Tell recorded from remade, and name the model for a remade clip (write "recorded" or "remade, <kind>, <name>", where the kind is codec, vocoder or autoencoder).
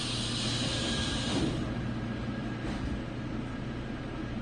recorded